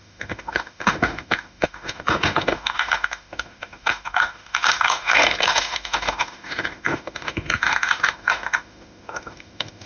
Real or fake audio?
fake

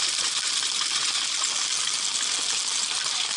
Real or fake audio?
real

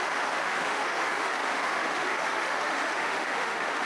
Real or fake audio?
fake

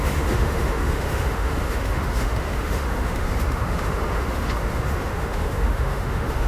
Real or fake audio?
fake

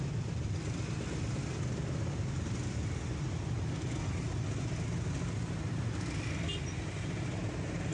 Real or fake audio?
real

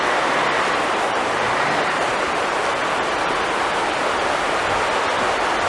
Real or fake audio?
real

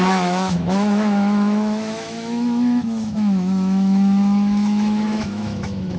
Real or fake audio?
fake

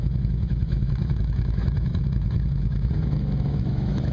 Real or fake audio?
fake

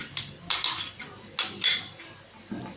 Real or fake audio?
real